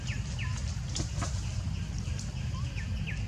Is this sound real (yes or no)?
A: yes